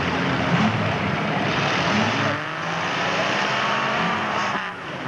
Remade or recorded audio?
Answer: remade